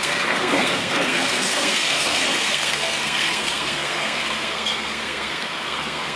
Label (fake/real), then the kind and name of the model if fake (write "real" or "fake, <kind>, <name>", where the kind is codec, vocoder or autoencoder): fake, codec, SNAC